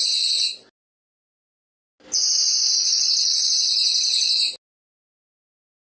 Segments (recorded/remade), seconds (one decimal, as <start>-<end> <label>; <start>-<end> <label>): 0.0-5.9 recorded